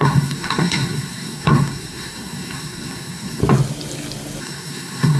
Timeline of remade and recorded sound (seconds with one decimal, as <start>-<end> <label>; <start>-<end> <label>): 0.0-3.4 remade; 3.4-4.4 recorded; 4.4-5.2 remade